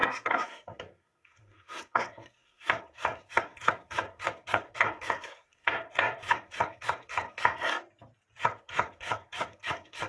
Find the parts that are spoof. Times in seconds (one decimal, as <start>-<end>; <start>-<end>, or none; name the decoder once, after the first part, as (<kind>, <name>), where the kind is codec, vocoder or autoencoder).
0.0-7.7 (codec, SNAC); 8.4-10.1